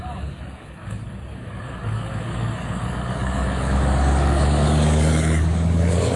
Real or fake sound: fake